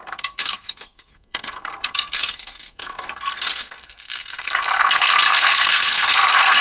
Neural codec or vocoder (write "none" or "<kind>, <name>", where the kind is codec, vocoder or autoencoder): codec, SNAC